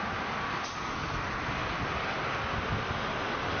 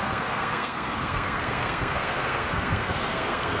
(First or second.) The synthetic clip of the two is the second